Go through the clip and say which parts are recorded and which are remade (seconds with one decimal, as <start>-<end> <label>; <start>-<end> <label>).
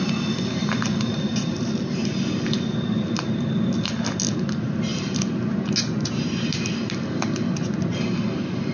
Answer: 0.0-0.6 recorded; 0.6-1.8 remade; 1.8-8.7 recorded